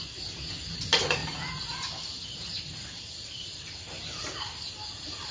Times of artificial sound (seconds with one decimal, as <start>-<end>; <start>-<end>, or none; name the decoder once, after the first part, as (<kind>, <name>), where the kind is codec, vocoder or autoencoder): none